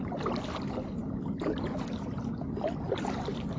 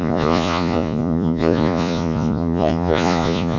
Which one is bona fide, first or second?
first